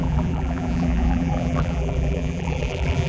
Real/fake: fake